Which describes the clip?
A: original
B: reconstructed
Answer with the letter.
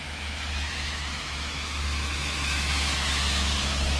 B